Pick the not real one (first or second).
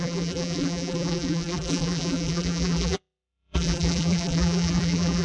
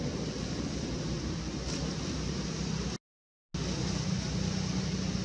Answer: first